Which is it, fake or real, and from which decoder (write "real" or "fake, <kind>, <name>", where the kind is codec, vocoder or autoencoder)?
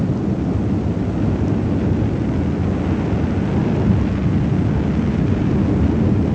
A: real